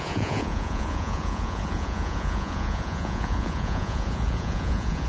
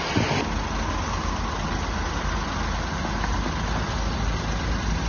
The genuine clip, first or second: second